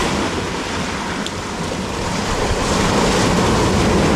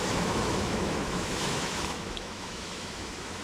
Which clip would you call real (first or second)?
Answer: first